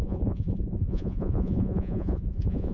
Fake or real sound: fake